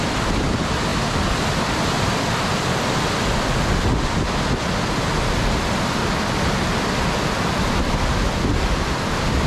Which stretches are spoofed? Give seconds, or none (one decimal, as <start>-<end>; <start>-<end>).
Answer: none